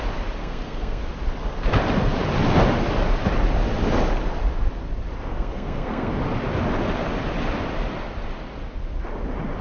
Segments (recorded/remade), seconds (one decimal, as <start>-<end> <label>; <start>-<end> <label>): 0.0-0.4 recorded; 0.4-1.0 remade; 1.0-5.3 recorded; 5.3-6.1 remade; 6.1-9.6 recorded